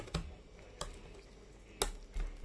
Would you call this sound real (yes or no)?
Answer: yes